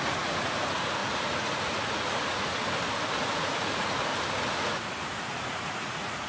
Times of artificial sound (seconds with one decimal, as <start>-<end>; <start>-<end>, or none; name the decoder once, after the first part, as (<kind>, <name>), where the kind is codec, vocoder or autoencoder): 0.0-2.6 (vocoder, Vocos); 3.1-4.1; 4.6-6.3